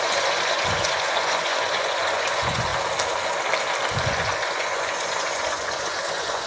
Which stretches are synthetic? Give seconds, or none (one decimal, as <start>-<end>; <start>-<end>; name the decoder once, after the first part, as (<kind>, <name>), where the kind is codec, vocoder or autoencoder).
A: 0.0-2.7 (vocoder, Vocos); 4.0-6.5